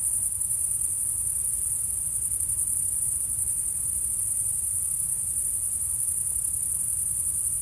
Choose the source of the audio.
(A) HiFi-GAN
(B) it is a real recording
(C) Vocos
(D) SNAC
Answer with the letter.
B